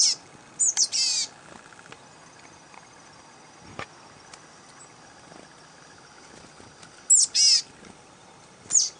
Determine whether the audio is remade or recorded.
recorded